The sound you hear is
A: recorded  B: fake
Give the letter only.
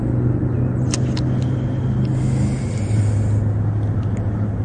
A